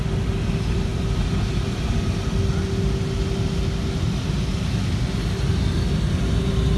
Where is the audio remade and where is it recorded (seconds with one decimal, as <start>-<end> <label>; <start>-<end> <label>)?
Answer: 0.0-6.8 recorded